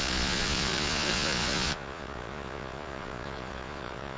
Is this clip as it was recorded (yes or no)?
no